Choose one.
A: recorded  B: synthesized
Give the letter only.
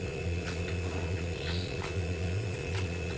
B